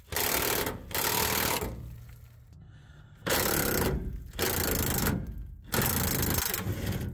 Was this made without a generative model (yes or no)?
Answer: yes